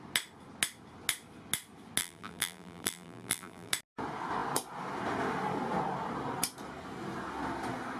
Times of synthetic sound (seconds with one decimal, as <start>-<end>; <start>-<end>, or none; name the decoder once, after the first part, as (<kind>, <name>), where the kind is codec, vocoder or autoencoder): 2.0-3.7 (vocoder, BigVGAN v2)